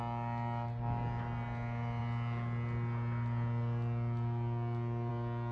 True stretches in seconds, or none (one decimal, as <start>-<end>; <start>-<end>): 0.0-5.5

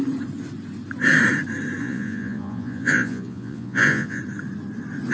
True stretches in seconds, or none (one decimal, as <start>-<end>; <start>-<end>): 0.0-1.8; 4.2-5.1

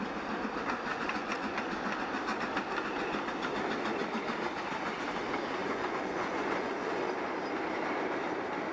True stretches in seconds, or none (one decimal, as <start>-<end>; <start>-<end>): 0.0-0.9; 1.6-5.6; 7.1-8.7

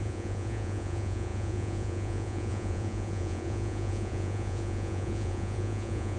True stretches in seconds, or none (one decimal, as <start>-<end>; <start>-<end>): none

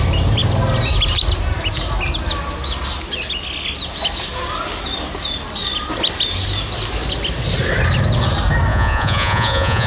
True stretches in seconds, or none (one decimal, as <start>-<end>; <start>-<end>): 0.0-8.7